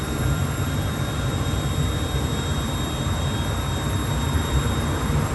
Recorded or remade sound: remade